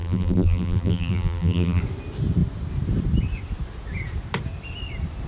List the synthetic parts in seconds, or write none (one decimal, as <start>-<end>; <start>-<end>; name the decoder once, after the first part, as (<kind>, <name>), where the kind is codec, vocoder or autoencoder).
0.0-1.8 (vocoder, BigVGAN v2)

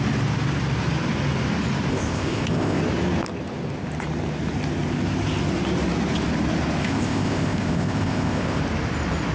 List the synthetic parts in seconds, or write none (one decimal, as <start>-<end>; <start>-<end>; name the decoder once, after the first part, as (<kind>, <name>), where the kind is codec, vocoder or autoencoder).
1.9-2.8 (codec, ZipCodec); 6.8-8.6

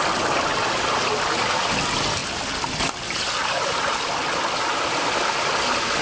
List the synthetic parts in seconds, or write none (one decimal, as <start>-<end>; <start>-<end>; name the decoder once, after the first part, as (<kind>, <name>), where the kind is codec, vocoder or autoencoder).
none

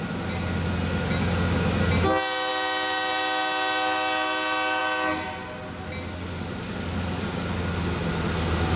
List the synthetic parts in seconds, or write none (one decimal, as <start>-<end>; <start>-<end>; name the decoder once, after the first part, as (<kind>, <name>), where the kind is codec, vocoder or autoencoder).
none

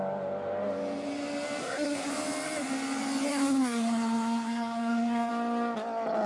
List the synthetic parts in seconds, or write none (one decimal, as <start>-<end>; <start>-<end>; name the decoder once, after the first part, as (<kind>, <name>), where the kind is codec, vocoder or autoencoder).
1.6-2.1 (codec, SNAC); 3.3-5.3

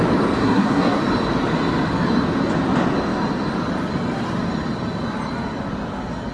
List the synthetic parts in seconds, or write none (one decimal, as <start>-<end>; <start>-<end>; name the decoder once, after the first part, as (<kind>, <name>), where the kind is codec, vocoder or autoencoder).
0.4-1.0 (codec, SNAC)

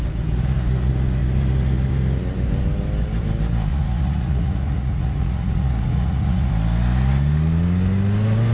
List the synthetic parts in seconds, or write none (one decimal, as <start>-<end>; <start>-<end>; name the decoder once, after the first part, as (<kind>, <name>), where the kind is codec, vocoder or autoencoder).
3.7-6.5 (vocoder, Vocos)